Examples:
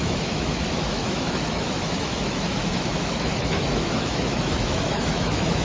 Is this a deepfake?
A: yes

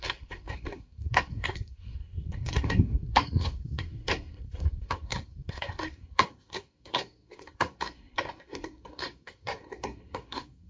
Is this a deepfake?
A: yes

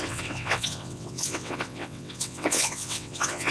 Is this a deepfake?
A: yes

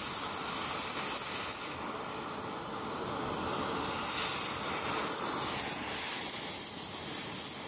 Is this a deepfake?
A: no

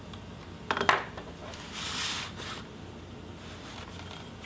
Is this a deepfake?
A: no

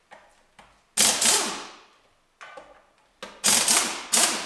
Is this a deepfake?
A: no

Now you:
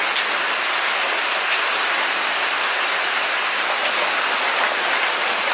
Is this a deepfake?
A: no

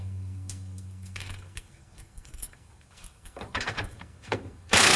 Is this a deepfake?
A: yes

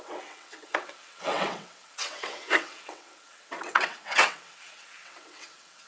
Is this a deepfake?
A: yes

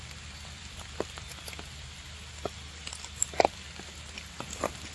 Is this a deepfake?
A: no